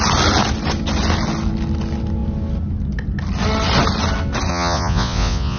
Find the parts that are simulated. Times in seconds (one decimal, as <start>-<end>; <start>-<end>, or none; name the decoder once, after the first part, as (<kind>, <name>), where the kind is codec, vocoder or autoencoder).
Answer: 4.5-5.6 (vocoder, Vocos)